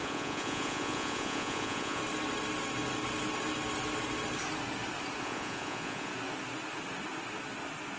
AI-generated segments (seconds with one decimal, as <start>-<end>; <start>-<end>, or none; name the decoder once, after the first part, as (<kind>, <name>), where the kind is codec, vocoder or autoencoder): 0.0-2.0 (vocoder, Vocos); 5.2-6.1